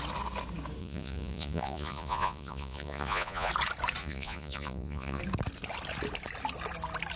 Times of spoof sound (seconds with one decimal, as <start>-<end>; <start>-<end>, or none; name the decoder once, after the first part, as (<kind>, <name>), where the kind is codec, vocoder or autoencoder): 0.8-3.5 (vocoder, Vocos); 4.0-5.2